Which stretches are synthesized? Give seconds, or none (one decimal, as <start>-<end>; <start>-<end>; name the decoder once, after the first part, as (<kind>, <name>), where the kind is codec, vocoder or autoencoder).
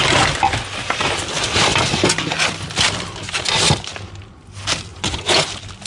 4.9-5.5 (vocoder, Vocos)